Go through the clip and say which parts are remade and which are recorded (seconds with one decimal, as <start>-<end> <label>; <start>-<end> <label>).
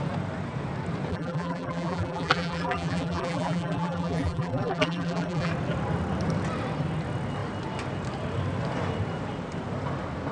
0.0-1.1 recorded; 1.1-5.5 remade; 5.5-10.3 recorded